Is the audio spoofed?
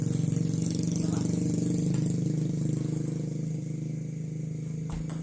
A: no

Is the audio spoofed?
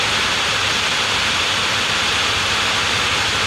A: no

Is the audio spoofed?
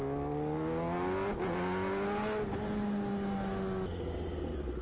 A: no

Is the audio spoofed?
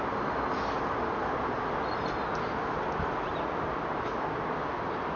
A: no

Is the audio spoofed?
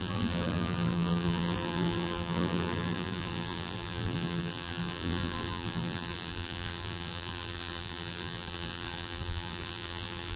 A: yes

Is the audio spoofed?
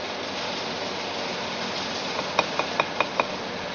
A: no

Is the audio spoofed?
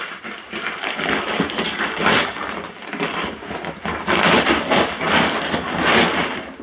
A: no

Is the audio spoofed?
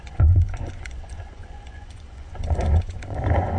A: yes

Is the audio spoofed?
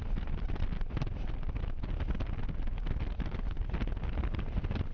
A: no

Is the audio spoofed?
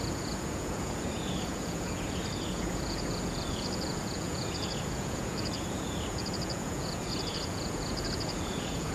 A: yes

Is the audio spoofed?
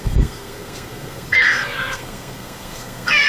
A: yes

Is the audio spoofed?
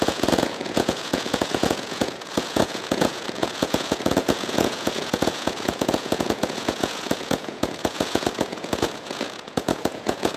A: yes